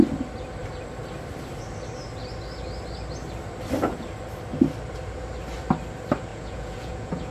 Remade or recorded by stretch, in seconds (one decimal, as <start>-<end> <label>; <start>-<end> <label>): 0.0-6.3 recorded; 6.3-7.3 remade